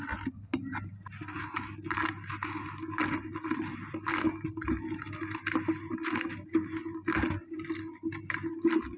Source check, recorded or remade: recorded